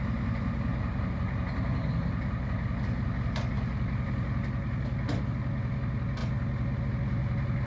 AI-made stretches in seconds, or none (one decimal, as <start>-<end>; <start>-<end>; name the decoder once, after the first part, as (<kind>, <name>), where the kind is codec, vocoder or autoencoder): none